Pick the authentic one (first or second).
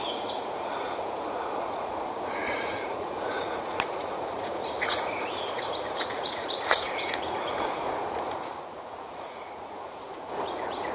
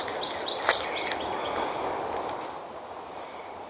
second